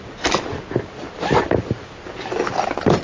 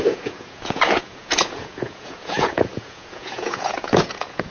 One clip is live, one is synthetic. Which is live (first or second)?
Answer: first